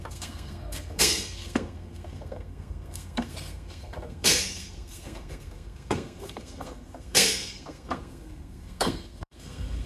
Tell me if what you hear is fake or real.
fake